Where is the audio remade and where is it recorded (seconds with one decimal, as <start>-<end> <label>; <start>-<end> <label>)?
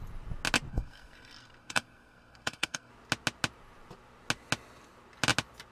0.0-0.7 recorded; 0.7-2.9 remade; 2.9-5.7 recorded